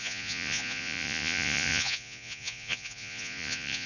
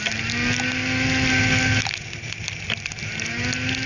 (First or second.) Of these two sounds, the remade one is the first